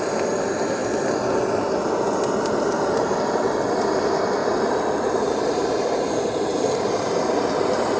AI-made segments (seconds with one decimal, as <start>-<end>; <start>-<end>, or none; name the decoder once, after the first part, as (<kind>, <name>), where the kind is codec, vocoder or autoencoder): 4.4-6.9 (vocoder, BigVGAN v2)